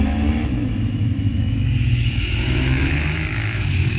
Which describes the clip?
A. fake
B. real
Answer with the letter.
A